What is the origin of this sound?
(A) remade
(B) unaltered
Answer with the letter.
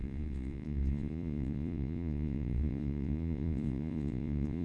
A